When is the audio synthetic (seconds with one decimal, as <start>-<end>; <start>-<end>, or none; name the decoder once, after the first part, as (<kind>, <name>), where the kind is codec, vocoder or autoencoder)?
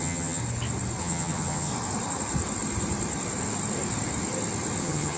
0.0-0.4 (vocoder, HiFi-GAN); 1.0-1.7; 4.8-5.2